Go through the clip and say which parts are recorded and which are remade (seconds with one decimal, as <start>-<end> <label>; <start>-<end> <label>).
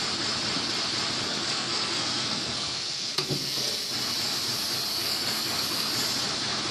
0.0-1.3 recorded; 1.3-3.7 remade; 3.7-4.9 recorded; 4.9-5.9 remade; 5.9-6.7 recorded